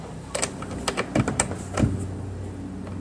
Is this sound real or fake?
real